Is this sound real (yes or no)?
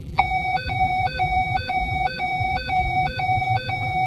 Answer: no